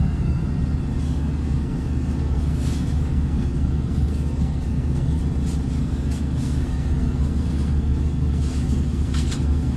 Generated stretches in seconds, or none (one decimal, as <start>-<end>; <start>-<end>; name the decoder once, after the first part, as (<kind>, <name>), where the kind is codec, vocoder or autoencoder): 0.0-0.4 (codec, SNAC); 1.0-5.2; 5.8-9.8